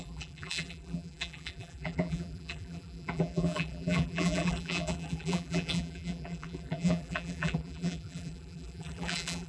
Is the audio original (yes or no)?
no